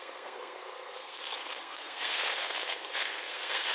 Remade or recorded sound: remade